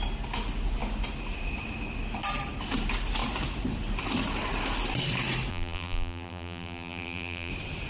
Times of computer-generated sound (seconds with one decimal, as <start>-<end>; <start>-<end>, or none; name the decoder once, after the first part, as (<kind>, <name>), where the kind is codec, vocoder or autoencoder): 5.5-7.5 (vocoder, BigVGAN v2)